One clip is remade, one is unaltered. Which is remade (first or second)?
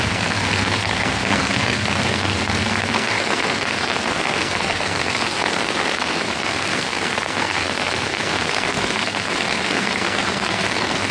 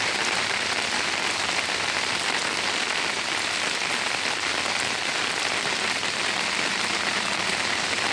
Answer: first